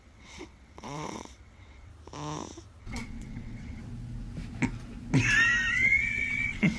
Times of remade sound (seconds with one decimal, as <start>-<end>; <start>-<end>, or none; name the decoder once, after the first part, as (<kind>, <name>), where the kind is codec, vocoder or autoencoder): 0.0-1.9 (vocoder, WaveNeXt); 2.8-3.8; 5.7-6.8